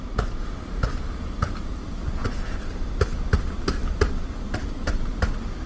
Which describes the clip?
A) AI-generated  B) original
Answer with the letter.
A